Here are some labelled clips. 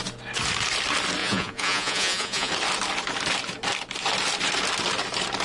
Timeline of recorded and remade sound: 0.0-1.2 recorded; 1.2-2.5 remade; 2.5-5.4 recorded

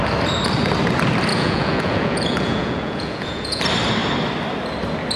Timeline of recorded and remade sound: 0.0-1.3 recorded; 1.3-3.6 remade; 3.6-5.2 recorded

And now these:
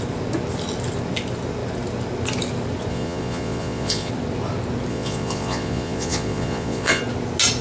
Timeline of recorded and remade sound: 0.0-2.9 recorded; 2.9-4.1 remade; 4.1-4.9 recorded; 4.9-7.0 remade; 7.0-7.6 recorded